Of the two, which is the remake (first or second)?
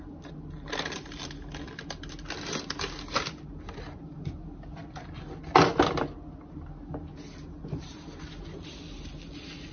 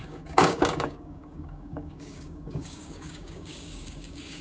second